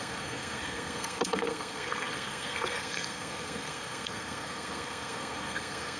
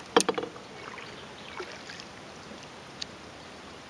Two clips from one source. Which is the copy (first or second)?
first